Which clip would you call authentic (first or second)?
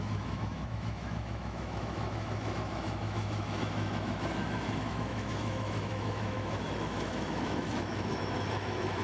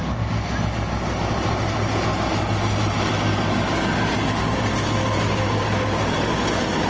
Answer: second